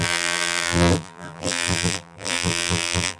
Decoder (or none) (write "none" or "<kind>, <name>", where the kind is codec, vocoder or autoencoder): vocoder, BigVGAN v2